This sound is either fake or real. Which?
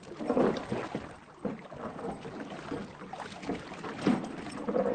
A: real